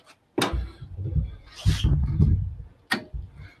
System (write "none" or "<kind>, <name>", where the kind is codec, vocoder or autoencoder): none